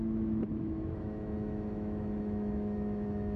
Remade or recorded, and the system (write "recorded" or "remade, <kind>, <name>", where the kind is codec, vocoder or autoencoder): remade, autoencoder, DAC-VAE